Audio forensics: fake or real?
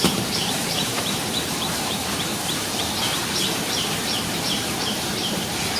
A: fake